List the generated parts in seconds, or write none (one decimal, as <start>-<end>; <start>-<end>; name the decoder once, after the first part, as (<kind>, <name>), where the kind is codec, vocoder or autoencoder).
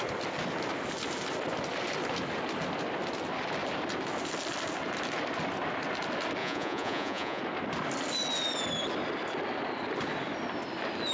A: 6.4-7.4 (vocoder, Vocos)